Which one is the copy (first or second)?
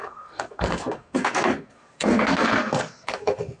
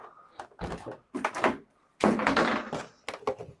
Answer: first